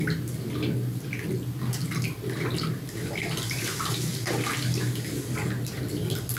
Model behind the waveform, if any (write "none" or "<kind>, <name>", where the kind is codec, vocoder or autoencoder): none